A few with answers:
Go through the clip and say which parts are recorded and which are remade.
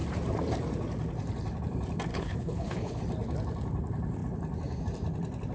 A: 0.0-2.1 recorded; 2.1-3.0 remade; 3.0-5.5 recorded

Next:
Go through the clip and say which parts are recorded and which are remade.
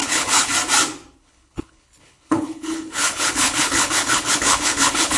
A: 0.0-0.5 remade; 0.5-1.2 recorded; 1.2-5.2 remade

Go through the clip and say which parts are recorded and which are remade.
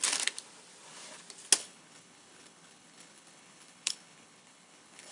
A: 0.0-1.6 recorded; 1.6-5.1 remade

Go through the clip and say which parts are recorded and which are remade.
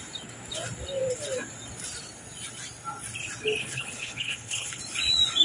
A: 0.0-3.6 recorded; 3.6-4.8 remade; 4.8-5.4 recorded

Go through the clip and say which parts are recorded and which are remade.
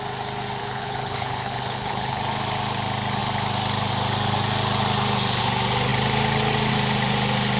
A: 0.0-0.6 recorded; 0.6-2.2 remade; 2.2-7.6 recorded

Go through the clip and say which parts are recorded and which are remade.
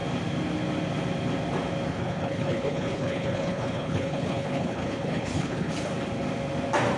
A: 0.0-1.9 recorded; 1.9-5.7 remade; 5.7-7.0 recorded